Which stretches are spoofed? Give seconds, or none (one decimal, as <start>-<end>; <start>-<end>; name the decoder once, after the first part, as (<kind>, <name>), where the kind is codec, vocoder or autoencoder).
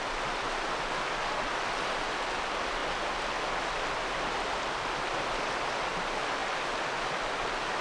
none